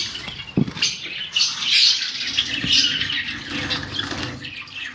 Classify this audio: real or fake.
real